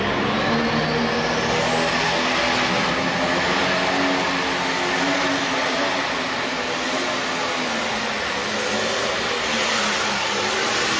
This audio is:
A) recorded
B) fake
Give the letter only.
A